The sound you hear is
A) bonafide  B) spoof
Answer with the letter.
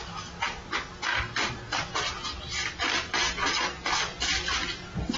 A